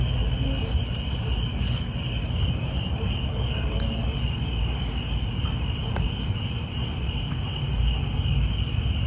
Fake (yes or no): no